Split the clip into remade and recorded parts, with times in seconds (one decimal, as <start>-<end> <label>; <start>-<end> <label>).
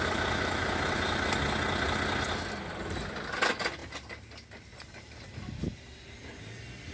0.0-6.9 recorded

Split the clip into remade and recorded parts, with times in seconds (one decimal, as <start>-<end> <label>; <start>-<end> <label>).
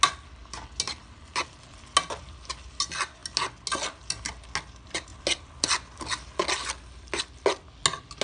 0.0-8.2 recorded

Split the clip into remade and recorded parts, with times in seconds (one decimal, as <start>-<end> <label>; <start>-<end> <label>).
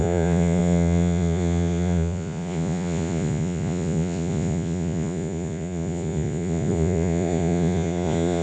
0.0-8.4 remade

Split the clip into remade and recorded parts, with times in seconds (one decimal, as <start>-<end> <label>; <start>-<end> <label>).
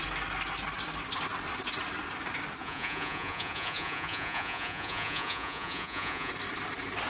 0.0-2.6 recorded; 2.6-6.3 remade; 6.3-7.1 recorded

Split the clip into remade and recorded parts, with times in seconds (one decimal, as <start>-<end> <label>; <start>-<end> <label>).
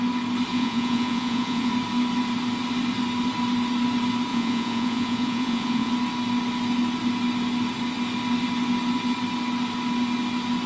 0.0-0.5 recorded; 0.5-1.7 remade; 1.7-4.3 recorded; 4.3-5.9 remade; 5.9-10.7 recorded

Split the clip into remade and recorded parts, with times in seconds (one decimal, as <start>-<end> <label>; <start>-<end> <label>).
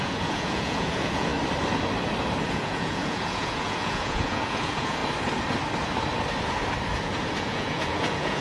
0.0-1.3 remade; 1.3-2.5 recorded; 2.5-5.0 remade; 5.0-7.0 recorded; 7.0-8.4 remade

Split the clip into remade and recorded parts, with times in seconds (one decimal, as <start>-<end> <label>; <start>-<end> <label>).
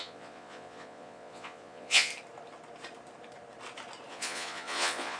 0.0-2.1 remade; 2.1-4.1 recorded; 4.1-5.2 remade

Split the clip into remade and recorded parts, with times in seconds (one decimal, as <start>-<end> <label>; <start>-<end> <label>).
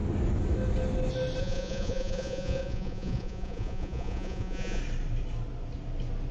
0.0-1.4 recorded; 1.4-4.8 remade; 4.8-6.3 recorded